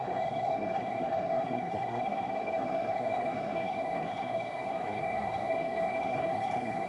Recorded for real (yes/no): no